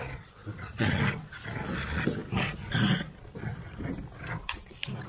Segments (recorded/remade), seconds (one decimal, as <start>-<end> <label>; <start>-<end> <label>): 0.0-0.4 recorded; 0.4-1.0 remade; 1.0-5.1 recorded